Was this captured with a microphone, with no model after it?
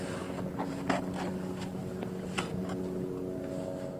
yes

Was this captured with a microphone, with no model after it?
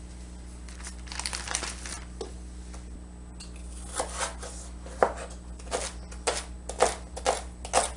yes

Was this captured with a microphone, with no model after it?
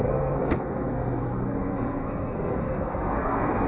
no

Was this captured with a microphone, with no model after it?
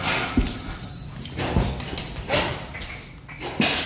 yes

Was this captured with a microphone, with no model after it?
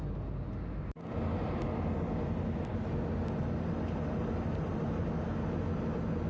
yes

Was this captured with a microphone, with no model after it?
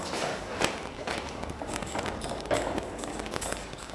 no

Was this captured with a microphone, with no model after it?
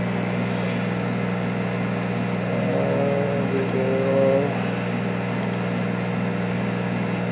yes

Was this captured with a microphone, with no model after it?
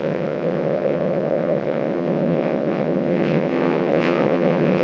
no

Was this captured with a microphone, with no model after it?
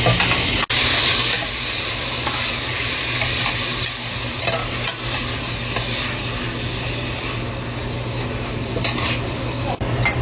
yes